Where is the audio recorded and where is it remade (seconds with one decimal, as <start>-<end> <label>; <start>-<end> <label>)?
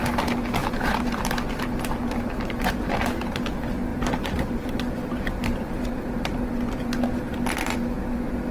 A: 0.0-0.6 recorded; 0.6-1.3 remade; 1.3-3.9 recorded; 3.9-6.5 remade; 6.5-8.5 recorded